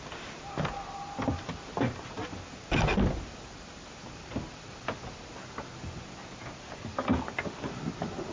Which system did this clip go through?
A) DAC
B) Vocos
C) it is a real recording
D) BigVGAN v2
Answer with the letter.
C